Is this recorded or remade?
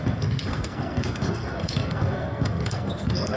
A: remade